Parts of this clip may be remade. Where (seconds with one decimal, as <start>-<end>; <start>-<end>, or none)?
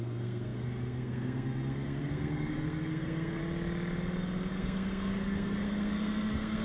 0.0-3.4; 4.5-6.6